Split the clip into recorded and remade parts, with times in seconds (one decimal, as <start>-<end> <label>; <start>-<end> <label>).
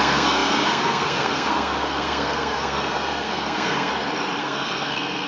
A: 0.0-3.9 remade; 3.9-4.4 recorded; 4.4-5.3 remade